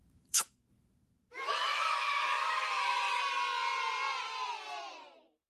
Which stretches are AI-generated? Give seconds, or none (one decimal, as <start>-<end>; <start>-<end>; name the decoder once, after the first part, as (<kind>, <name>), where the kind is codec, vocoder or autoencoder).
0.0-3.2 (autoencoder, DAC-VAE)